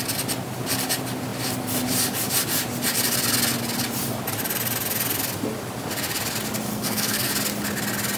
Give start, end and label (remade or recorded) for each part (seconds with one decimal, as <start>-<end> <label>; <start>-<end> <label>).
0.0-6.7 recorded; 6.7-7.3 remade; 7.3-8.2 recorded